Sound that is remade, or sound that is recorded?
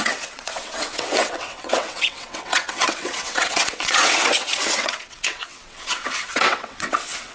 remade